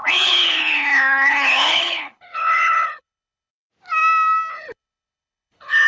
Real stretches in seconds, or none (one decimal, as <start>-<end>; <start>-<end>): 3.5-4.5